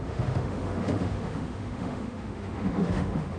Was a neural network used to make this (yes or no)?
yes